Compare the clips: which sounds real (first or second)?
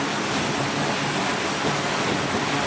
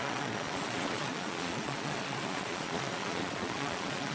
first